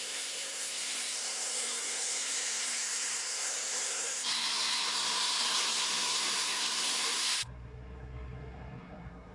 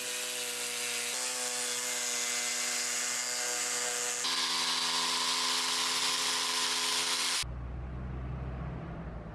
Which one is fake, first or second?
first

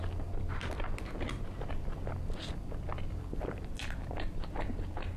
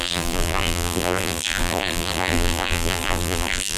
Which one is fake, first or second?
second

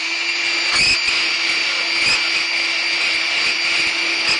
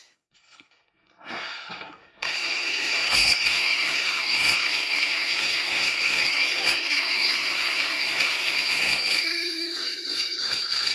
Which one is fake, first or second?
second